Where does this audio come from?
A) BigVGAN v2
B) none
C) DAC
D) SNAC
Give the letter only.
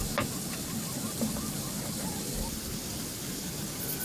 B